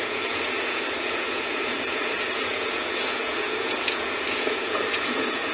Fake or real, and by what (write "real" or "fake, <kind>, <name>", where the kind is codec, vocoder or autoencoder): fake, vocoder, Vocos